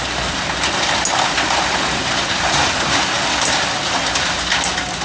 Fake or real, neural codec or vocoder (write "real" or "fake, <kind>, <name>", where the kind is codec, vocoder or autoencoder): real